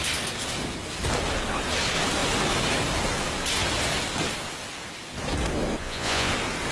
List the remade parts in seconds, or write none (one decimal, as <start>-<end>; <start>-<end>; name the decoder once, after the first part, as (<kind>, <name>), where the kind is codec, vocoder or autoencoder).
5.8-6.3 (vocoder, Vocos)